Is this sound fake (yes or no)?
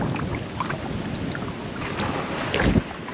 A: no